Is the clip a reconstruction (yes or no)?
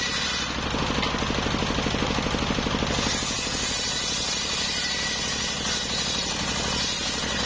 no